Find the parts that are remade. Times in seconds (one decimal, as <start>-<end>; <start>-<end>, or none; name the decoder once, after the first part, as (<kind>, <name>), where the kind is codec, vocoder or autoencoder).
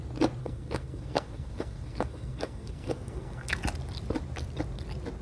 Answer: 0.4-3.5 (codec, SNAC)